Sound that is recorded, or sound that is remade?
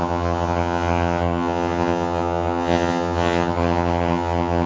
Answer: remade